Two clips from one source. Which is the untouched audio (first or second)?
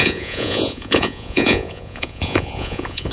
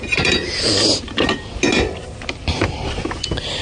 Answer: second